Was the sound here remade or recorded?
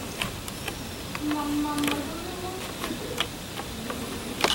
recorded